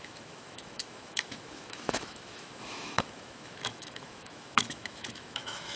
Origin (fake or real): fake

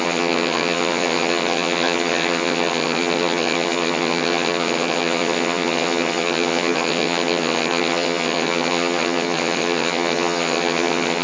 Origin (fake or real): fake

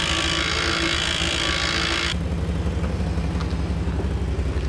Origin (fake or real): real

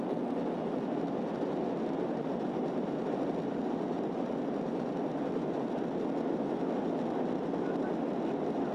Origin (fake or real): real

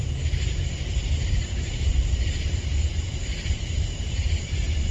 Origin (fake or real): fake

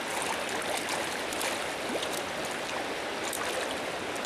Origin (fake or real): real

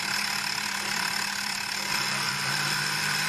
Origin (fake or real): fake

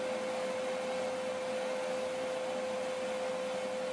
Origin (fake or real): real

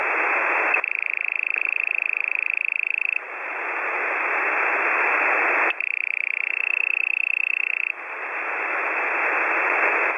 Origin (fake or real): real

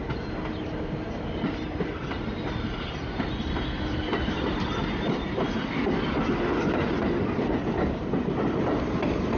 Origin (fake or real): real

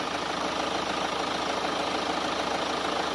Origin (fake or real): real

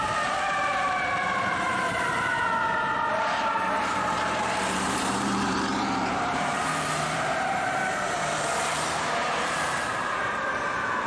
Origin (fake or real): fake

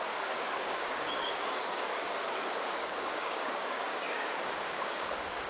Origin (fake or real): fake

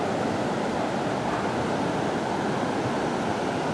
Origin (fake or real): real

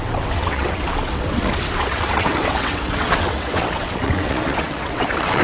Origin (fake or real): fake